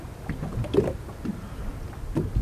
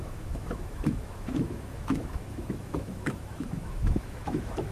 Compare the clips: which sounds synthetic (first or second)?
second